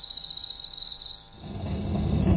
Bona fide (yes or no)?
yes